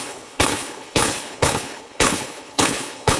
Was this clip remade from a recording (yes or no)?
yes